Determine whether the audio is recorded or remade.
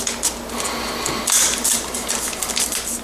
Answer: remade